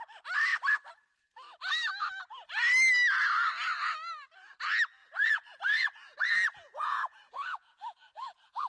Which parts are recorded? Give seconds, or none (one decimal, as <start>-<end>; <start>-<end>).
0.0-5.0